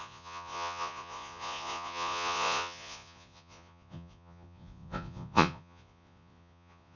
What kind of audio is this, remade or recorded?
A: remade